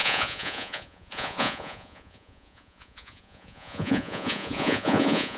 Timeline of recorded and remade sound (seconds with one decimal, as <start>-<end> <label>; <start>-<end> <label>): 0.0-5.4 remade